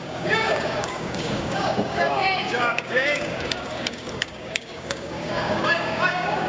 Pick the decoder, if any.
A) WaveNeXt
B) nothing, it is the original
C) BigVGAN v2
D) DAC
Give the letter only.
D